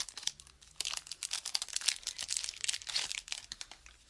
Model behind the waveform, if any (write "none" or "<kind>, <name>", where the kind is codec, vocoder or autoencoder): none